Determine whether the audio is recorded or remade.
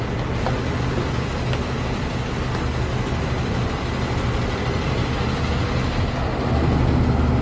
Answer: recorded